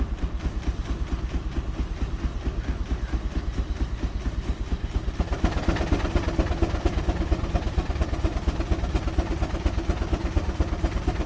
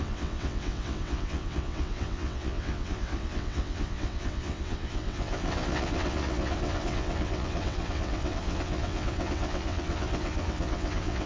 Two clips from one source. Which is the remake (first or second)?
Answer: second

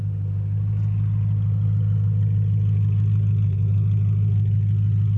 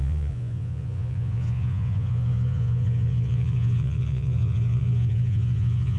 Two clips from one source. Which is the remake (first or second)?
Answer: second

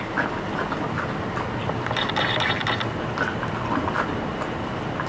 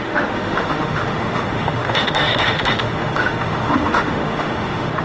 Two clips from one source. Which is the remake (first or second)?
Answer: second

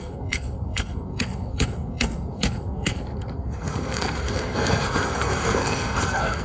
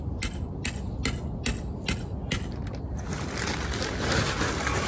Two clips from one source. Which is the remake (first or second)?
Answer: first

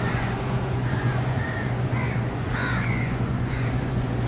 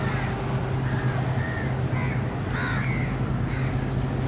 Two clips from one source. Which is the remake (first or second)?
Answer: first